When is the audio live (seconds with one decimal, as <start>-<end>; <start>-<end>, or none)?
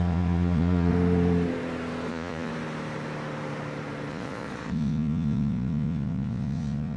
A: 0.9-2.1; 2.5-4.1